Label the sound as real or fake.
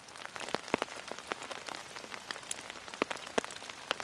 real